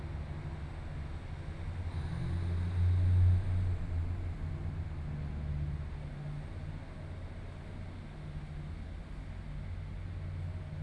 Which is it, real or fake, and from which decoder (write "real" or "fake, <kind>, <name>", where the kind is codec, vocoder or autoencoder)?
real